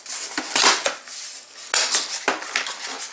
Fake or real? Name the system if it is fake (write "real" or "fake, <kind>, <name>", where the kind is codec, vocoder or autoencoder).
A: real